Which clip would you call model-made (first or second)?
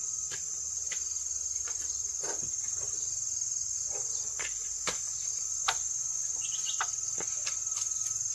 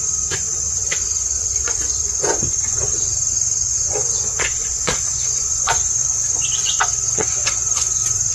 second